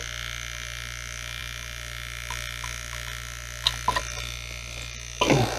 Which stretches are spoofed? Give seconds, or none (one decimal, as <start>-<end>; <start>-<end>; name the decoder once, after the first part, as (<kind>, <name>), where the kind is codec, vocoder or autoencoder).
none